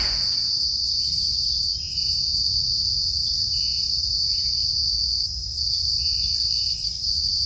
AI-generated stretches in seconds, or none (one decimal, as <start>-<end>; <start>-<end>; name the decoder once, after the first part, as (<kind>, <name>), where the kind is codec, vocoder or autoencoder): 0.0-4.6 (vocoder, Vocos); 6.9-7.5